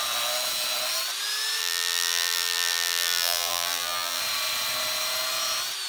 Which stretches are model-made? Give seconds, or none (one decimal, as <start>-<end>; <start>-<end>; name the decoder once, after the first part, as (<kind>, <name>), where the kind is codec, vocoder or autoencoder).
1.6-4.2 (vocoder, BigVGAN v2)